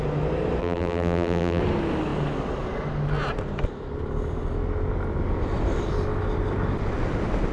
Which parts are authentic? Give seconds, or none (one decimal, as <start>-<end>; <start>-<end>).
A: 0.0-0.6; 1.6-7.5